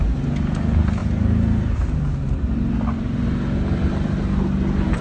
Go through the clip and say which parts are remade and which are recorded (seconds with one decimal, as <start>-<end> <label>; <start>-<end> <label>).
0.0-1.0 recorded; 1.0-3.9 remade; 3.9-5.0 recorded

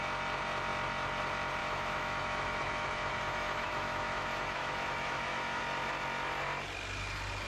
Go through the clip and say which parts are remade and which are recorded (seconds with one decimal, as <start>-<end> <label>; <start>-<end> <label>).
0.0-1.6 recorded; 1.6-5.6 remade; 5.6-7.5 recorded

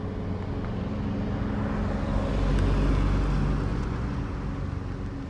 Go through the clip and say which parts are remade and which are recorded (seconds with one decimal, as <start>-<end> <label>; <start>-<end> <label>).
0.0-3.7 recorded; 3.7-4.3 remade; 4.3-5.3 recorded

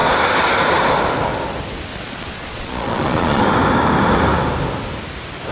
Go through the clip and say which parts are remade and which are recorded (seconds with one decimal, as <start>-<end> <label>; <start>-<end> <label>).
0.0-1.9 recorded; 1.9-3.4 remade; 3.4-5.5 recorded

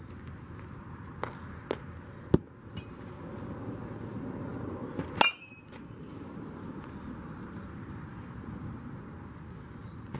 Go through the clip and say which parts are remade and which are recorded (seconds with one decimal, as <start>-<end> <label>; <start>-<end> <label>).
0.0-10.2 recorded

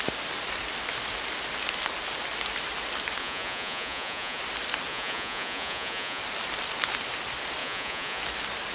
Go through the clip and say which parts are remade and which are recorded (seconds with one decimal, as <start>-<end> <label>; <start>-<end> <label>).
0.0-3.2 recorded; 3.2-4.4 remade; 4.4-4.9 recorded; 4.9-6.2 remade; 6.2-7.6 recorded; 7.6-8.2 remade; 8.2-8.7 recorded

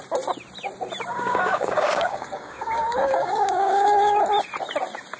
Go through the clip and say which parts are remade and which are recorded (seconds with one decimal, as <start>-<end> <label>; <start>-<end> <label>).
0.0-1.1 recorded; 1.1-4.2 remade; 4.2-5.2 recorded